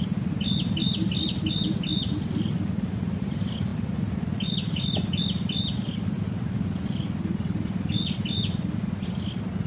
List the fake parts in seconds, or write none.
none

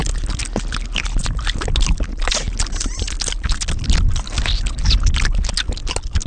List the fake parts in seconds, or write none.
none

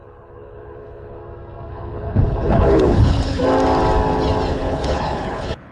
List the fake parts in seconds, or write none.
0.0-1.2 (codec, HILCodec); 1.7-3.4; 4.5-5.7

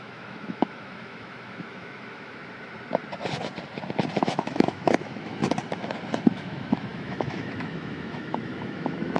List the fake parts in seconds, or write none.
0.0-2.4 (autoencoder, DAC-VAE); 4.3-5.4; 6.3-9.2

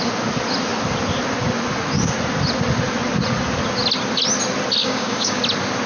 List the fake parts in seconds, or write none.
4.8-5.4 (codec, DAC)

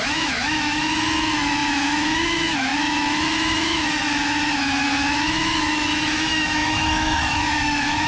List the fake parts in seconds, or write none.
0.0-8.1 (autoencoder, DAC-VAE)

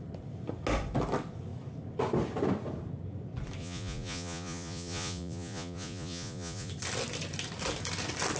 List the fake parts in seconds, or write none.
3.6-6.7 (vocoder, Vocos)

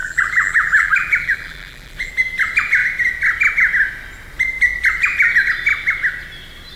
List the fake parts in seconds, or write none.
0.0-2.1 (vocoder, BigVGAN v2)